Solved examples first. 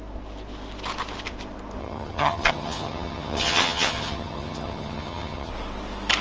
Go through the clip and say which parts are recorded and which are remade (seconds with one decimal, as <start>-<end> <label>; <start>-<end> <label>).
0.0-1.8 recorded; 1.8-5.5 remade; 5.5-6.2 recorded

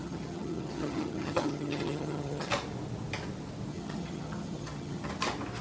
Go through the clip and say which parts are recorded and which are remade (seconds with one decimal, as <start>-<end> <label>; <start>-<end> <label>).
0.0-2.5 remade; 2.5-3.7 recorded; 3.7-5.1 remade; 5.1-5.6 recorded

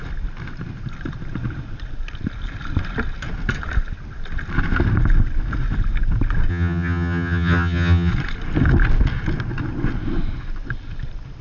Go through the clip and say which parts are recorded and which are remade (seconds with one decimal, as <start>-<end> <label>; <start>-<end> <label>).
0.0-6.5 recorded; 6.5-8.1 remade; 8.1-11.4 recorded

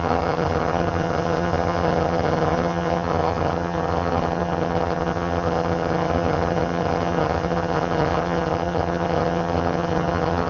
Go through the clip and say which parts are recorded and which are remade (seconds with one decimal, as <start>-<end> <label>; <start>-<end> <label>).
0.0-10.5 remade